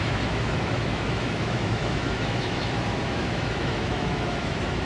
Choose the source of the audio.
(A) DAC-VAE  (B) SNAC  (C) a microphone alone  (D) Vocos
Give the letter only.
A